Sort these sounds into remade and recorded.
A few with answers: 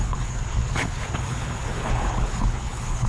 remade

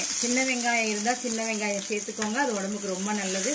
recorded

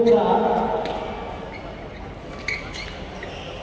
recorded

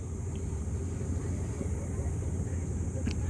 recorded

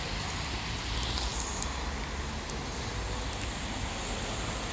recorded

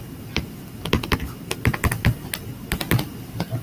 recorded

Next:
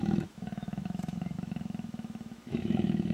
remade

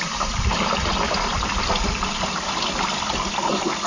remade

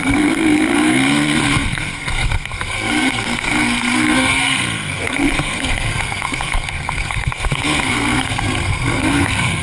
remade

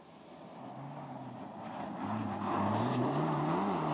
recorded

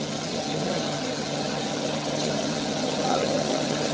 remade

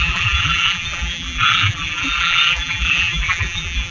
remade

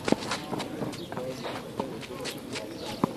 recorded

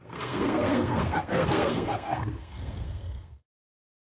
remade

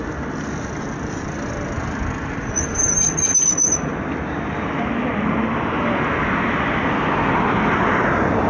recorded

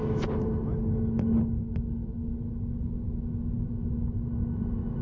recorded